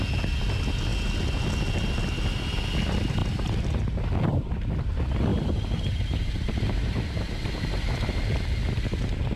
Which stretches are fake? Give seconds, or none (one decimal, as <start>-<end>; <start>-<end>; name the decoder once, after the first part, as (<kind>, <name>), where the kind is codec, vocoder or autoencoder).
5.3-8.2 (vocoder, BigVGAN v2)